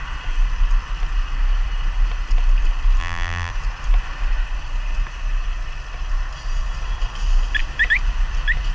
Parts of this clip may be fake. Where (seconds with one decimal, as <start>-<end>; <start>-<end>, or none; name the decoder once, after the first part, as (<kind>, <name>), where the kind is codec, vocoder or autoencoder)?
3.0-3.5 (vocoder, BigVGAN v2)